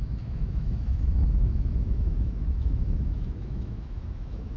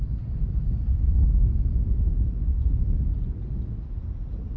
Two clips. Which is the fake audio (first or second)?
first